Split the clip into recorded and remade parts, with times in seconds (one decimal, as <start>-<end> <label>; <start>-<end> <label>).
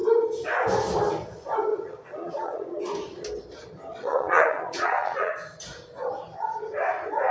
0.0-1.7 recorded; 1.7-2.8 remade; 2.8-3.9 recorded; 3.9-5.3 remade; 5.3-7.3 recorded